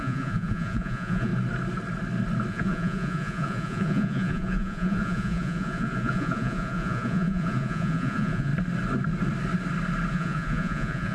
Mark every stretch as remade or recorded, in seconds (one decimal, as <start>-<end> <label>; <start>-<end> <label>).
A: 0.0-1.3 remade; 1.3-2.5 recorded; 2.5-8.5 remade; 8.5-10.1 recorded; 10.1-11.1 remade